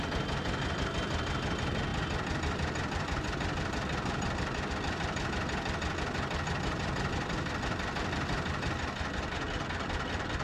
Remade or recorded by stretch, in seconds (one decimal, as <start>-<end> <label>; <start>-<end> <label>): 0.0-1.9 recorded; 1.9-4.7 remade; 4.7-10.4 recorded